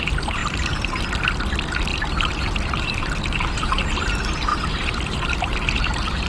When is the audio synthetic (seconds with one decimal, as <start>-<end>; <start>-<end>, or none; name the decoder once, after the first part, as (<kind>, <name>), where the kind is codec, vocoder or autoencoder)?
0.4-1.1 (vocoder, BigVGAN v2); 1.9-3.8; 4.5-6.3